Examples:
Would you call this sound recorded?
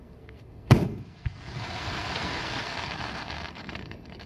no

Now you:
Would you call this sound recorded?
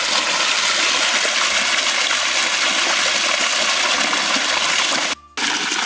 yes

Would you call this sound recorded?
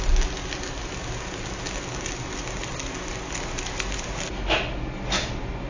yes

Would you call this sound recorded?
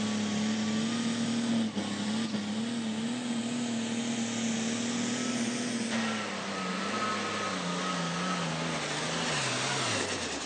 yes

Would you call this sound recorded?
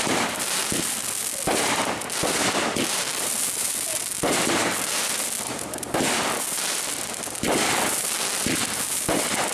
no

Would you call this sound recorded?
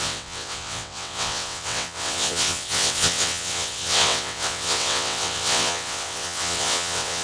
no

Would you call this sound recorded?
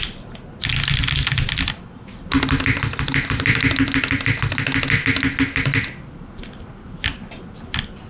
yes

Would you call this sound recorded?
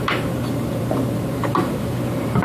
no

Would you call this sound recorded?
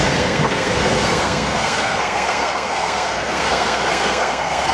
no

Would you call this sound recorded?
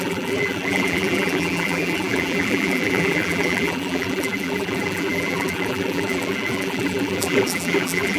no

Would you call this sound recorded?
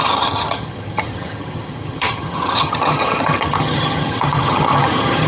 no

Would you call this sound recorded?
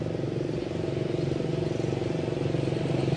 yes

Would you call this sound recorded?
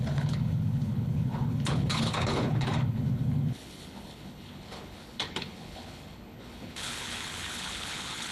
no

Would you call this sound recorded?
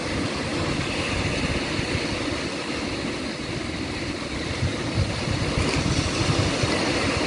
yes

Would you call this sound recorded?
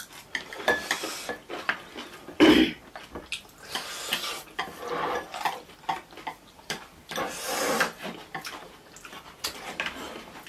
no